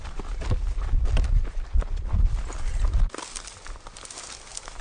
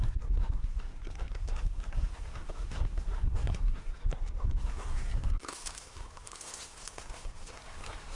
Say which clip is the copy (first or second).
second